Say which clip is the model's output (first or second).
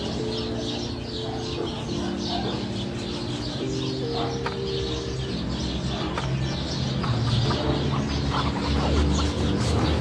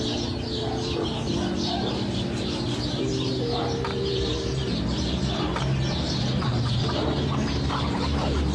second